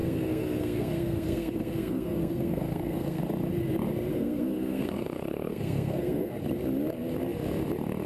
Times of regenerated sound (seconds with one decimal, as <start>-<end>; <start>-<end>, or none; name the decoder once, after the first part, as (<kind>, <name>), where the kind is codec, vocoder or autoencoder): 0.0-3.2 (codec, SNAC); 4.1-6.3